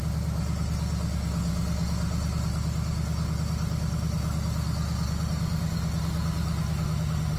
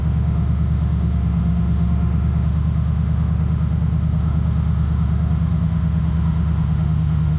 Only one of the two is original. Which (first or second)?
first